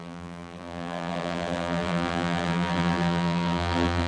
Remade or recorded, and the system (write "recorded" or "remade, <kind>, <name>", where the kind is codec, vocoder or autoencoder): remade, vocoder, BigVGAN v2